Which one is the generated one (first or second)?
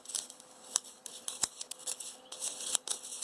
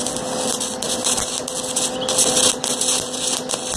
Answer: first